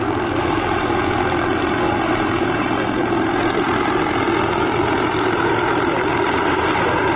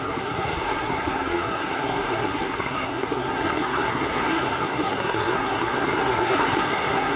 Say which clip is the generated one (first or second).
second